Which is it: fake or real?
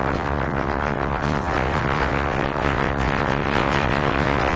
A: fake